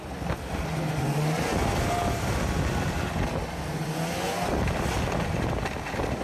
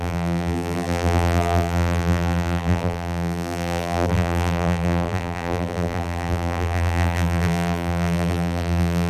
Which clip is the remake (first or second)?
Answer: second